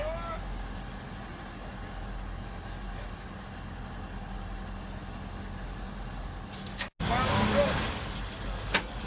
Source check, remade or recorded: recorded